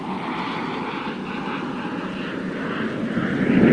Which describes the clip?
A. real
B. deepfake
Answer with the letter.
A